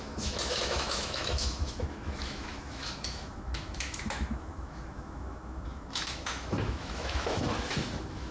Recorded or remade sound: remade